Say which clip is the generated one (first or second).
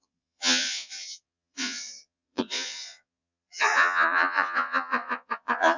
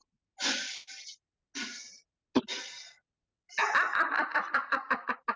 first